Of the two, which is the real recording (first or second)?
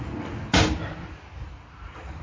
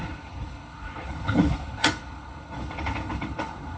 first